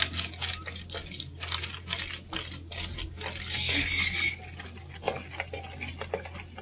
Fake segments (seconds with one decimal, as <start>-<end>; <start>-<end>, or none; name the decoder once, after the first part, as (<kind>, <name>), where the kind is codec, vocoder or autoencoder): none